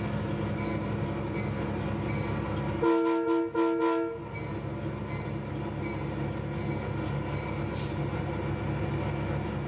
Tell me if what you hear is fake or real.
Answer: real